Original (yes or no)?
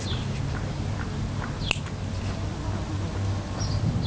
yes